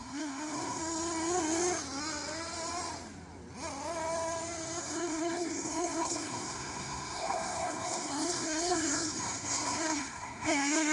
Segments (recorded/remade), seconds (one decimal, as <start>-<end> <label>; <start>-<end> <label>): 0.0-0.8 remade; 0.8-4.8 recorded; 4.8-10.9 remade